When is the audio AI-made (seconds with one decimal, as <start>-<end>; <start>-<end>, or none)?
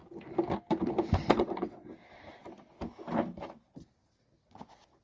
1.3-1.9